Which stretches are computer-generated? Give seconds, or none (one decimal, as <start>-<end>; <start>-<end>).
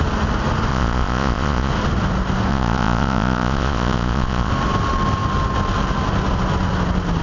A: 0.7-1.7; 2.5-4.5